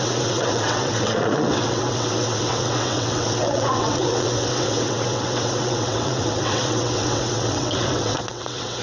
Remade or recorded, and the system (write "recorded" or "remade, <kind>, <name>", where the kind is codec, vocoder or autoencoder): remade, vocoder, WaveNeXt